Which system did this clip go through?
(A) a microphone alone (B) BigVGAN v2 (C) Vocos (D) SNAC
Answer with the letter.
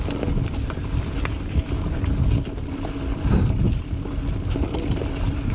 A